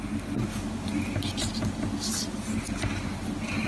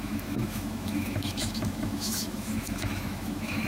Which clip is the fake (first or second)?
second